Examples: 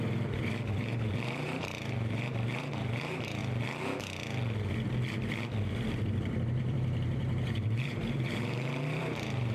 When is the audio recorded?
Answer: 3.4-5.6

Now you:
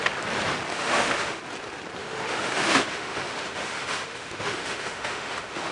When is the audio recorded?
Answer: 0.0-0.7; 1.4-2.0

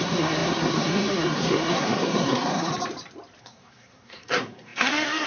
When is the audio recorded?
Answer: 2.7-3.4

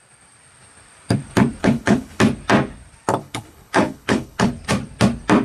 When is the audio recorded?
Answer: 0.0-1.6; 2.2-3.2; 4.5-5.4

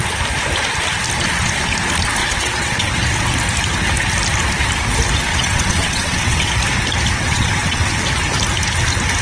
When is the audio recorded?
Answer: 0.0-2.2; 2.9-5.3; 6.5-7.2; 7.9-9.2

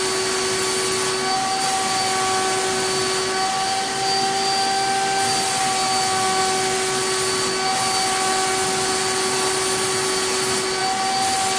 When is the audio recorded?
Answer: 0.0-11.6